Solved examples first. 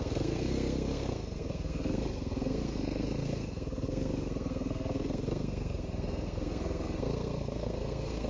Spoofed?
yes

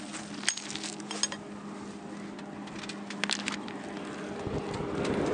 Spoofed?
no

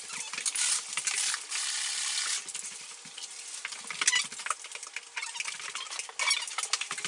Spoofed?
no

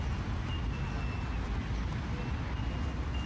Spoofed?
no